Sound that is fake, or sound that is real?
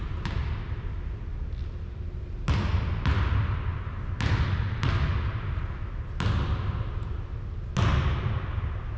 real